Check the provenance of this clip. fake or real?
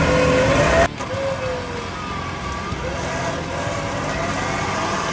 real